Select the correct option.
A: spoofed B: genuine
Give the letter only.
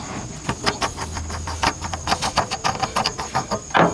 B